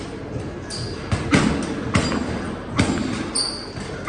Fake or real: real